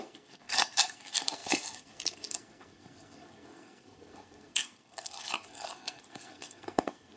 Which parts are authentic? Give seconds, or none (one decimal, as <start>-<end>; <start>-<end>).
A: none